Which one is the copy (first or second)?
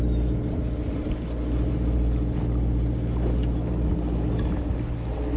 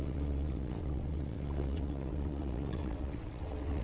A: second